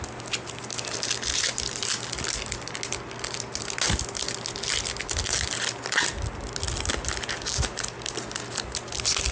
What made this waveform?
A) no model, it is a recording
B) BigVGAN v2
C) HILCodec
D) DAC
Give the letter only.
A